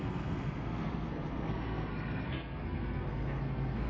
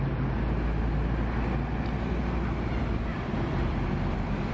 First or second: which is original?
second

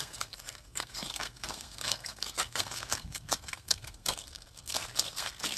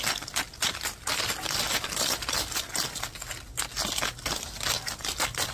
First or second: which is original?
second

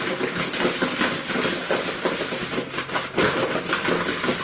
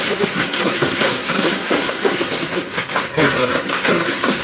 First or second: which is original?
first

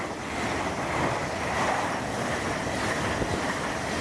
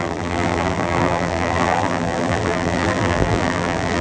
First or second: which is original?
first